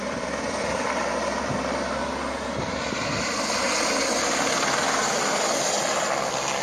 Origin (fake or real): real